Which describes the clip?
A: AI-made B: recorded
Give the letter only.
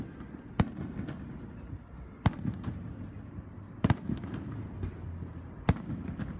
B